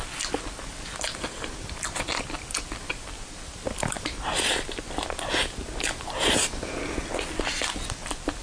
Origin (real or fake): real